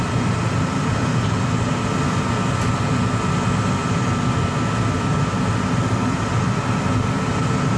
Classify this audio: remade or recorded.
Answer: recorded